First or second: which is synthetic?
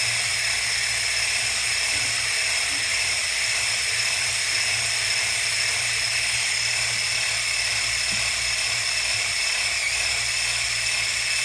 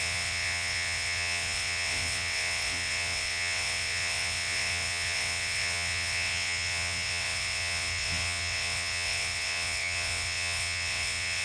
second